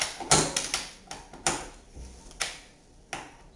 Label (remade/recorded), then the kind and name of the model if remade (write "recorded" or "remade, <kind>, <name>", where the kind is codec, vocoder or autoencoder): recorded